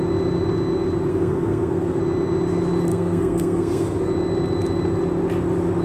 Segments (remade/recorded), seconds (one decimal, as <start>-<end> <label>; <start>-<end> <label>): 0.0-1.1 recorded; 1.1-2.0 remade; 2.0-2.9 recorded; 2.9-4.1 remade; 4.1-5.8 recorded